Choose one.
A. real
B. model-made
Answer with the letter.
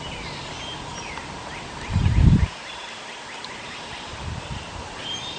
A